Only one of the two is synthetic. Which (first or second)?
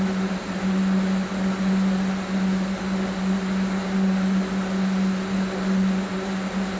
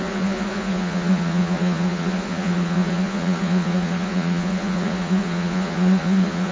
second